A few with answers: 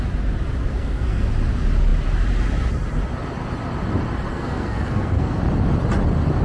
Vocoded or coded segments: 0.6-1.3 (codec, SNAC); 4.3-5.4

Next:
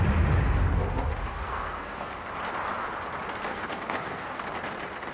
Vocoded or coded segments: 1.3-2.1 (codec, SNAC); 3.5-4.4

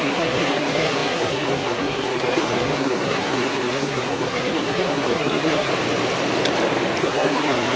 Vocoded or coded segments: 0.0-5.7 (codec, SNAC); 7.0-7.8

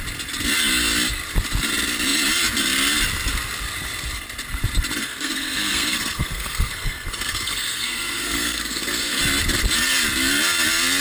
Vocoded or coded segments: 5.0-9.2 (codec, SNAC)